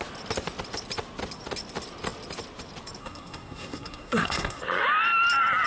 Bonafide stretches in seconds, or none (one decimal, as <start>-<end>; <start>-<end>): 0.0-3.0; 4.6-5.7